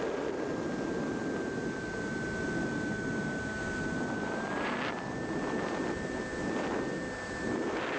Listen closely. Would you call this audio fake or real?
real